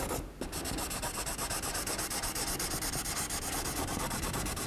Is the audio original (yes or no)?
yes